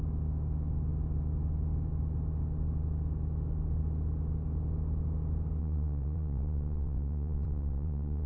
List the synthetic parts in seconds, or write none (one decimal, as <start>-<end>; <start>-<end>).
5.6-8.3